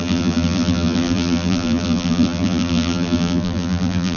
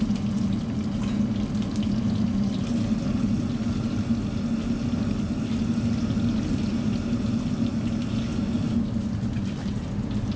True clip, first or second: second